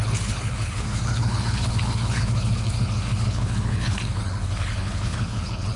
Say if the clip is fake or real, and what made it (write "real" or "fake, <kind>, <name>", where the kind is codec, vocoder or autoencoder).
fake, codec, HILCodec